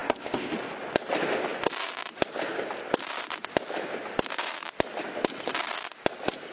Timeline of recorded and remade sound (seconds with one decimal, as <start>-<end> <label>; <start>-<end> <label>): 0.0-0.5 remade; 0.5-6.5 recorded